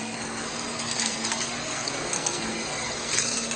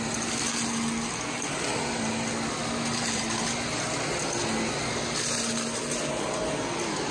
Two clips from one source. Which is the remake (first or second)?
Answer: first